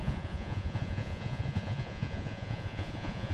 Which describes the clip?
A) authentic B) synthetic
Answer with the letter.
B